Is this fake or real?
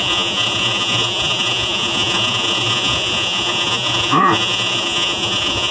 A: fake